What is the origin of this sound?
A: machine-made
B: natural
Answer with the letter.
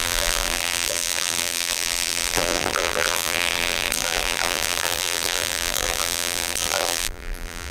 A